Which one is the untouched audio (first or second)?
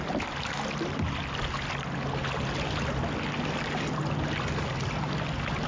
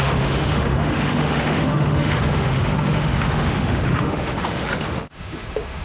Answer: first